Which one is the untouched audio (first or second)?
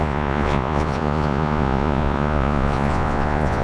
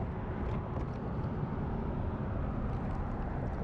second